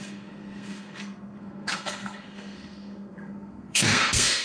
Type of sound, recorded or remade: remade